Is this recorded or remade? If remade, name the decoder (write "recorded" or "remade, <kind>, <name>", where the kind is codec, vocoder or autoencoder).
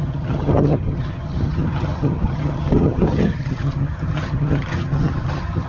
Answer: remade, vocoder, HiFi-GAN